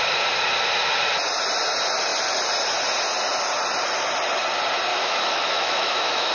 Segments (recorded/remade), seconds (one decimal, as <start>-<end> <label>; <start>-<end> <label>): 0.0-4.9 recorded; 4.9-6.3 remade